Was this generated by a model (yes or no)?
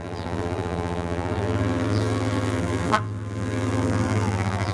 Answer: yes